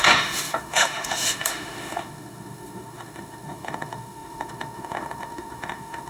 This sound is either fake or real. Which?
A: fake